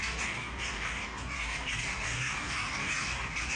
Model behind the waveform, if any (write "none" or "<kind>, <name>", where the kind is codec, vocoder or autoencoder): codec, DAC